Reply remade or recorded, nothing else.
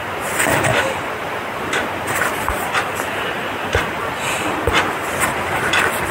recorded